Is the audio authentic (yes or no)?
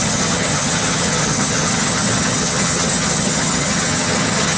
no